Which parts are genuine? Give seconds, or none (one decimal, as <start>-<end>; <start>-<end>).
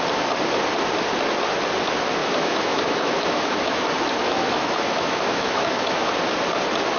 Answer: 0.0-2.2; 3.8-4.2; 6.1-7.0